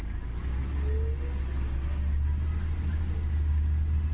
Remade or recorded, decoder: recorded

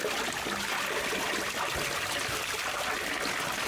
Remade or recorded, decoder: recorded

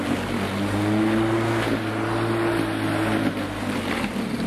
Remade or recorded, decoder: recorded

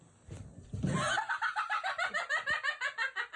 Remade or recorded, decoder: recorded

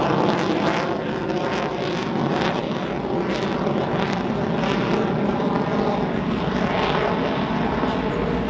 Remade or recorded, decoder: recorded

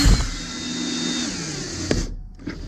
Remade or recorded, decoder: recorded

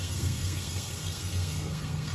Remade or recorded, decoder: remade, codec, SNAC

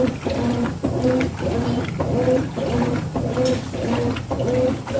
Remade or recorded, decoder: recorded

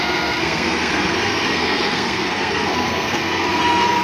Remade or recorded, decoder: remade, codec, SNAC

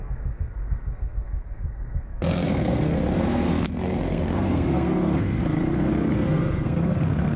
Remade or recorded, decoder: remade, codec, SNAC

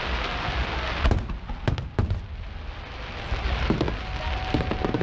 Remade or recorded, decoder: recorded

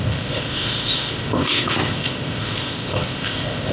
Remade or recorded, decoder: remade, codec, ZipCodec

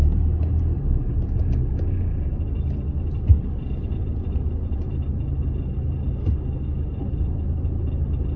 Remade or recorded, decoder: recorded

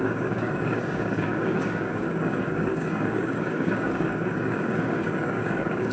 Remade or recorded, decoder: remade, codec, DAC